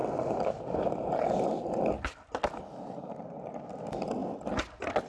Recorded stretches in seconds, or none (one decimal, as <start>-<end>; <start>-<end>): 0.0-5.1